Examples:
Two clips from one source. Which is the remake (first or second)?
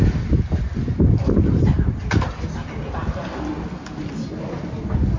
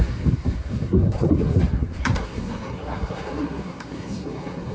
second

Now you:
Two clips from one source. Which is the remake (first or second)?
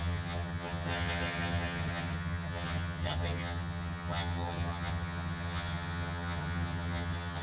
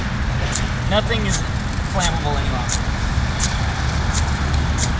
first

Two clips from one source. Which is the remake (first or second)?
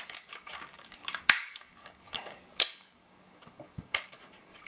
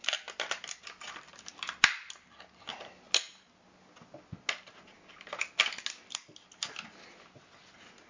first